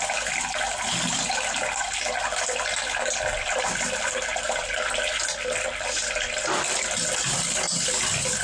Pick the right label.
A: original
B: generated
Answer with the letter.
A